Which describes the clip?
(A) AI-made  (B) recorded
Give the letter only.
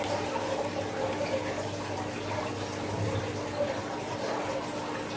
B